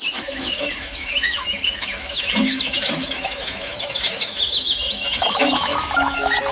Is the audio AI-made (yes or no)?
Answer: yes